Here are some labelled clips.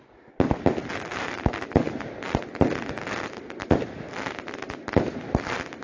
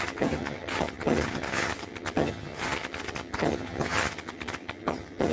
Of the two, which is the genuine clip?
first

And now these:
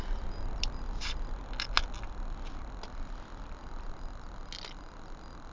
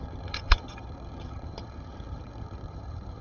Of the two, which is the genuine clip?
first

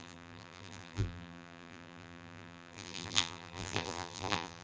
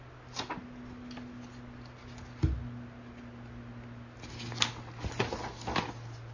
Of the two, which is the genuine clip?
second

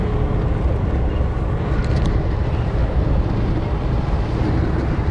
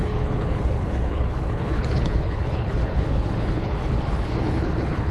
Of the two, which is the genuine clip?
first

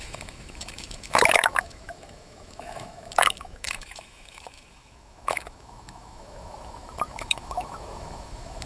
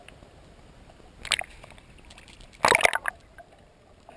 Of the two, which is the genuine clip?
second